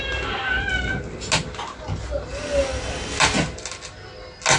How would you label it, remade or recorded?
recorded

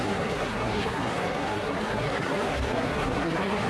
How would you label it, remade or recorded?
remade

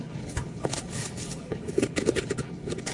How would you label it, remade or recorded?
remade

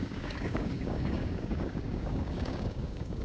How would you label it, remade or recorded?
remade